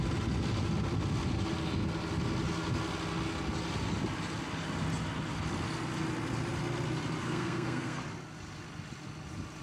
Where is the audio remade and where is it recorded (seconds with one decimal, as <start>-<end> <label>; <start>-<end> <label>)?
0.0-7.2 recorded; 7.2-8.0 remade; 8.0-9.6 recorded